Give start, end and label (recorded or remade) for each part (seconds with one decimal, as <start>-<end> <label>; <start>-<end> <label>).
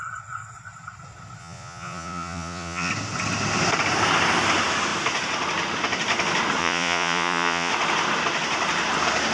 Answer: 0.0-1.4 recorded; 1.4-2.9 remade; 2.9-6.6 recorded; 6.6-7.7 remade; 7.7-9.3 recorded